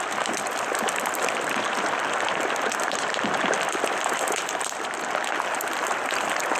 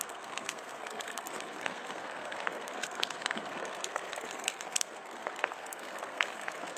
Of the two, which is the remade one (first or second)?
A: second